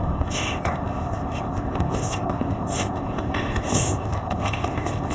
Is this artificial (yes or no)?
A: yes